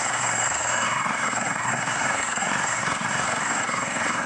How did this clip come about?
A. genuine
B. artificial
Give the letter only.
B